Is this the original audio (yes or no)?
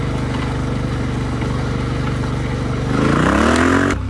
yes